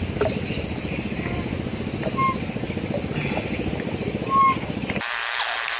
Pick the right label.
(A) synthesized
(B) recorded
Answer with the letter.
B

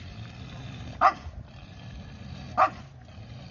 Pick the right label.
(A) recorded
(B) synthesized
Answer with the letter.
A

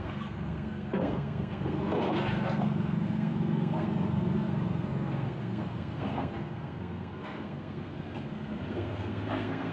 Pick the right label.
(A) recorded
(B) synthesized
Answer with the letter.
B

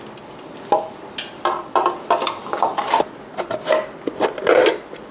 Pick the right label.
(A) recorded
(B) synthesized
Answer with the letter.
A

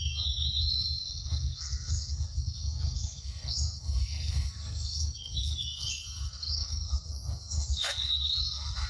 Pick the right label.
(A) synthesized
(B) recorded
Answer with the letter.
A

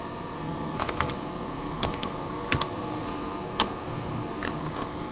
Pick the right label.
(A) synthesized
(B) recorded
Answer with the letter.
A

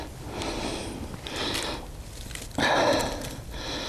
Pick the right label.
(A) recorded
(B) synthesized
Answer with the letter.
A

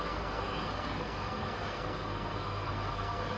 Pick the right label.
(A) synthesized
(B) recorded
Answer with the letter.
A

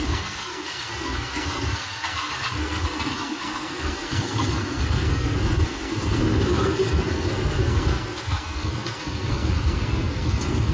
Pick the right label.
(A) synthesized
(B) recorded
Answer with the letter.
A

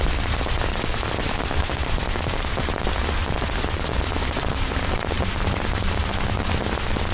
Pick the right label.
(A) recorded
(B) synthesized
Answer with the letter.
A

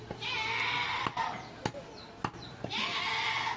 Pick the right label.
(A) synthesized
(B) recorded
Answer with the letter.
B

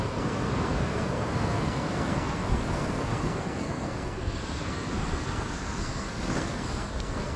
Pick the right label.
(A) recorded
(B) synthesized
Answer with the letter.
B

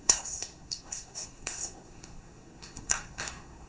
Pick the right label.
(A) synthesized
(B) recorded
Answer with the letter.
A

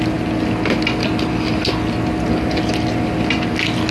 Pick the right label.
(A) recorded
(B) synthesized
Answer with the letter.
A